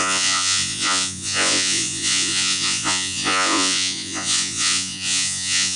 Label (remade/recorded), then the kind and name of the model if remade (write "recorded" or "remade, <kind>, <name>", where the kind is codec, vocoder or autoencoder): remade, vocoder, Vocos